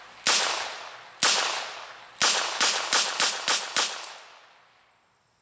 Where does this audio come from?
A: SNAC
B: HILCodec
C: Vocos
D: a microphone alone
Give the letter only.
D